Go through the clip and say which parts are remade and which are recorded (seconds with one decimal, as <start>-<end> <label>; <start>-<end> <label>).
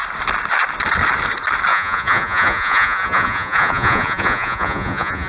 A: 0.0-1.7 recorded; 1.7-5.3 remade